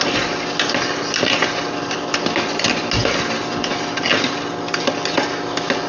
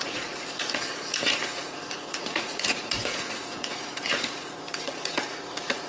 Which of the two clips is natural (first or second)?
first